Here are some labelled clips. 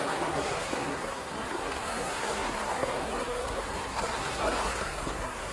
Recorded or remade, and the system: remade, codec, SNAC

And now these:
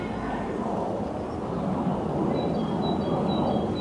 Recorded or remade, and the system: recorded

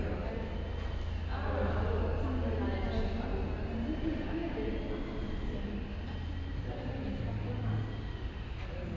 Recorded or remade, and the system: recorded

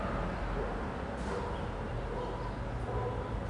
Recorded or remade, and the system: recorded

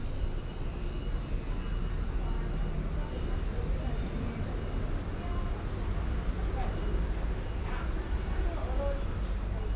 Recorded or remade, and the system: recorded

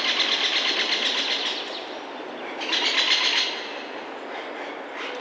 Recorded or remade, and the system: recorded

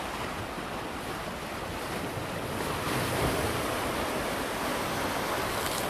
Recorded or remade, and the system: recorded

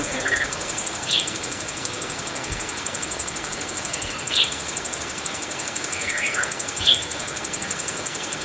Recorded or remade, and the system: remade, codec, SNAC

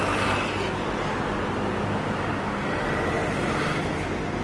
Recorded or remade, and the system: recorded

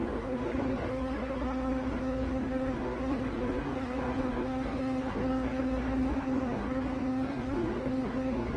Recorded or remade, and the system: remade, codec, SNAC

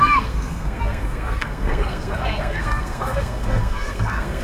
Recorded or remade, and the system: remade, codec, SNAC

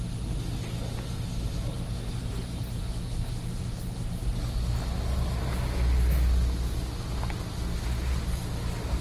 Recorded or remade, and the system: recorded